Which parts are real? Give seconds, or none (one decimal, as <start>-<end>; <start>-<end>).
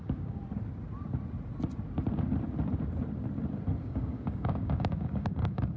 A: 0.4-3.8